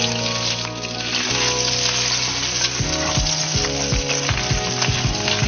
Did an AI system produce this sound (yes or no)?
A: no